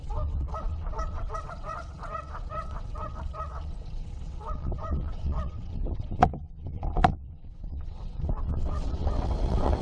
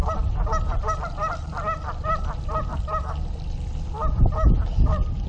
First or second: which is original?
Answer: second